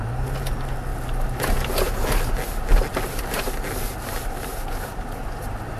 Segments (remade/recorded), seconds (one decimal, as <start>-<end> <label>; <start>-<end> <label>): 0.0-5.8 recorded